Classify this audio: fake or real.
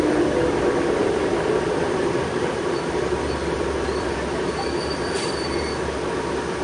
fake